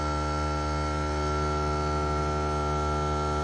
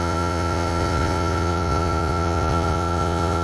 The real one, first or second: first